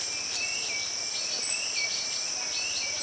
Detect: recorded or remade recorded